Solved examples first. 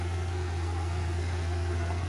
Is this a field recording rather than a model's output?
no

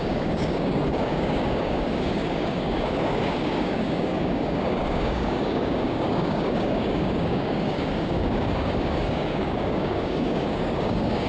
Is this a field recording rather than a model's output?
no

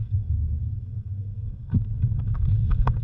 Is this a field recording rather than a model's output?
no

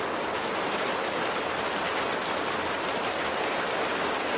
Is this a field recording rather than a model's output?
yes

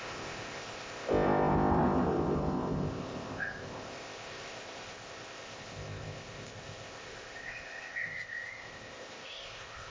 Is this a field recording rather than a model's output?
no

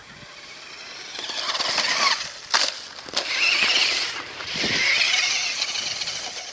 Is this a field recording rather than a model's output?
yes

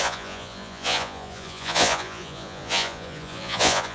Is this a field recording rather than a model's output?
no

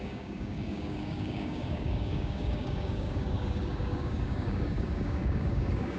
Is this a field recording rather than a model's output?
no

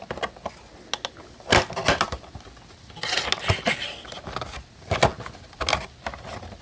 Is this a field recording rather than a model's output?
yes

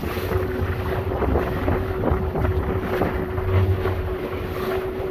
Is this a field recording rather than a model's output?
yes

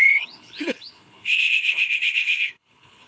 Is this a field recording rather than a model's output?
no